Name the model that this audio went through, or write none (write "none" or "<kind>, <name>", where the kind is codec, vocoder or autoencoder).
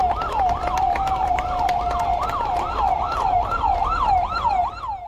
none